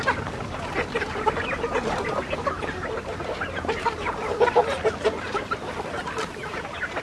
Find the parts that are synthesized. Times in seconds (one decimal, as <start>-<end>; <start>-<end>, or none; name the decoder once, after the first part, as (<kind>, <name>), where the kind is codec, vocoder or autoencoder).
none